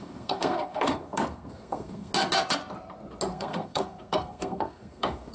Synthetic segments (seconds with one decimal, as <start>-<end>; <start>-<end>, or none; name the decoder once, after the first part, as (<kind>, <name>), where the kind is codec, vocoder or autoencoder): 0.0-2.1 (codec, SNAC); 3.3-5.3

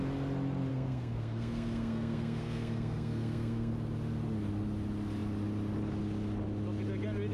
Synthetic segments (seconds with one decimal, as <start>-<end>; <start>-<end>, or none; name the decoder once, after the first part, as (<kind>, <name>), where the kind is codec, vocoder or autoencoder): 0.7-3.7 (codec, SNAC)

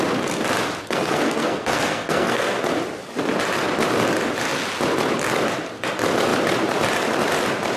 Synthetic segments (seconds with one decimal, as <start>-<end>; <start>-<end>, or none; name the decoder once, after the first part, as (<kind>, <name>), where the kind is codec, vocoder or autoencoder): 0.8-2.6 (codec, SNAC)

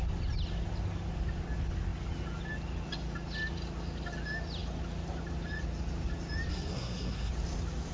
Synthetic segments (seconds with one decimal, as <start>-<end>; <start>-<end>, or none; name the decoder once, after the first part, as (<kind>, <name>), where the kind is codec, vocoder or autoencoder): 6.5-7.3 (codec, SNAC)

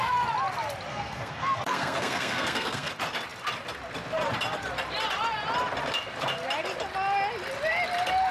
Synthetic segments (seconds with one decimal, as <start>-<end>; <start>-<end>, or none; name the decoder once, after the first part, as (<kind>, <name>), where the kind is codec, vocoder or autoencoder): 0.9-2.9 (codec, SNAC)

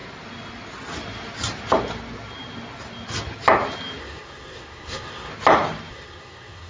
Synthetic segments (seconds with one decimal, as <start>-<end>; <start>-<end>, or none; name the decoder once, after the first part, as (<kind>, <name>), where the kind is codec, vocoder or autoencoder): 4.0-5.3 (codec, SNAC); 5.9-6.7